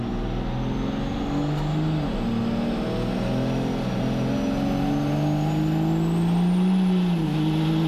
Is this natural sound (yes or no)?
yes